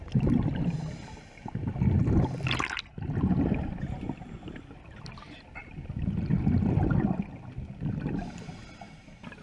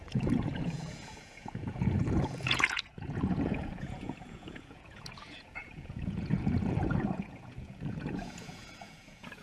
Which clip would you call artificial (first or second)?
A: second